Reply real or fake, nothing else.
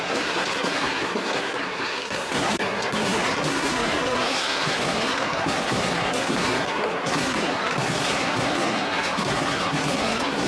fake